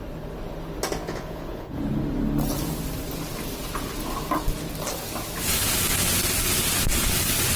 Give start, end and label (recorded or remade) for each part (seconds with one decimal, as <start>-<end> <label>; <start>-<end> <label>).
0.0-1.0 recorded; 1.0-1.8 remade; 1.8-7.6 recorded